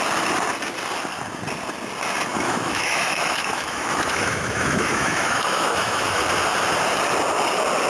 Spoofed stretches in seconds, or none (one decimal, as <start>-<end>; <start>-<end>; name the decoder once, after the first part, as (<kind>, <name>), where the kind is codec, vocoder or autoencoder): 2.3-6.2 (autoencoder, DAC-VAE)